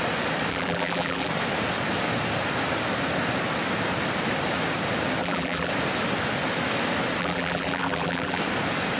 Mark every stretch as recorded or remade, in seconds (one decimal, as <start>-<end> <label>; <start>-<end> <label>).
0.0-0.5 recorded; 0.5-1.3 remade; 1.3-5.2 recorded; 5.2-5.7 remade; 5.7-7.2 recorded; 7.2-8.4 remade; 8.4-9.0 recorded

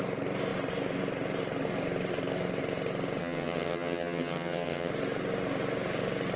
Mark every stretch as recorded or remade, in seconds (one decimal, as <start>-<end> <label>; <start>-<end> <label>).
0.0-3.2 recorded; 3.2-4.9 remade; 4.9-6.4 recorded